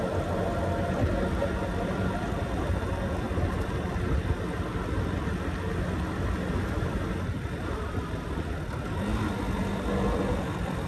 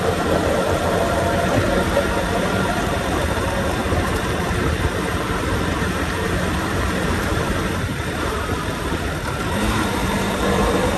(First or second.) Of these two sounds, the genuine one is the first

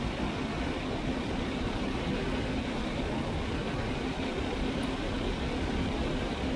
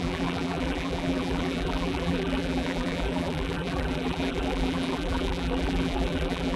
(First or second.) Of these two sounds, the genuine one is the first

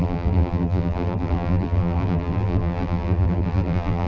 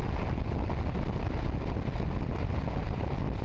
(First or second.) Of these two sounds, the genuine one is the second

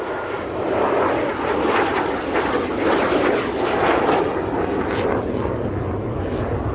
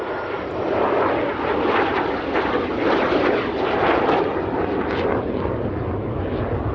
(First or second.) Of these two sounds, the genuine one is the first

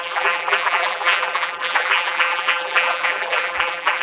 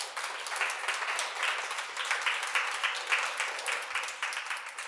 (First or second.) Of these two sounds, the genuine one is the second